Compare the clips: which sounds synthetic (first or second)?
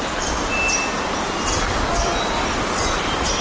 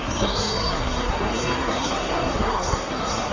second